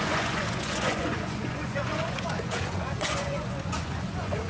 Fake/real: fake